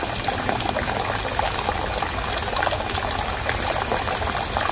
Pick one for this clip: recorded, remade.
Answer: recorded